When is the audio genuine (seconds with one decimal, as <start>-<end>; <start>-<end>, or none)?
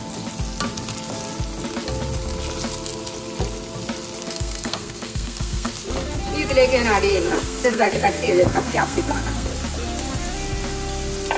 0.0-4.2; 5.7-7.1; 9.5-11.4